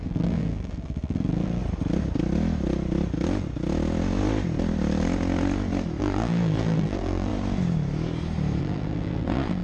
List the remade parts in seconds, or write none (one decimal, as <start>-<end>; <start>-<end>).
0.0-1.6; 6.0-7.3; 8.6-9.6